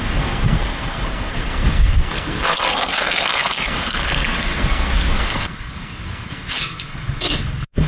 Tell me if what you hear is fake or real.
fake